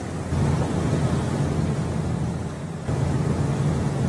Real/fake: real